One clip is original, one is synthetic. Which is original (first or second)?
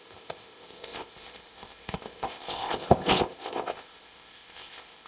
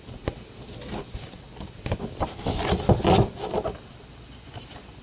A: second